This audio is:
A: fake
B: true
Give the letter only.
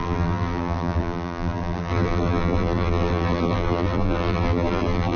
A